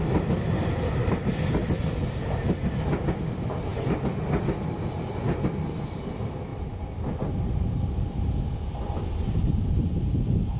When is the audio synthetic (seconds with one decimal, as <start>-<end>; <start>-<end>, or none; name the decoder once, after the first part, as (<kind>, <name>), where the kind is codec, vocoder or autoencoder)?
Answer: 1.0-1.8 (vocoder, BigVGAN v2); 5.5-6.1